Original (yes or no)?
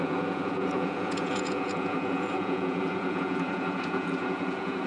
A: no